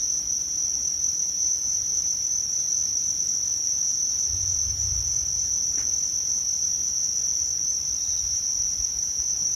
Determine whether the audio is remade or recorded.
remade